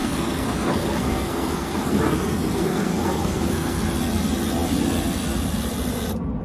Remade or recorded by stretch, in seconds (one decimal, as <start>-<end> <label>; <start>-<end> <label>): 0.0-3.8 remade; 3.8-6.4 recorded